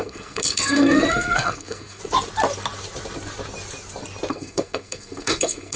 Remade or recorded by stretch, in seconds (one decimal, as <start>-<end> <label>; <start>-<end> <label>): 0.0-2.0 remade; 2.0-4.3 recorded; 4.3-5.8 remade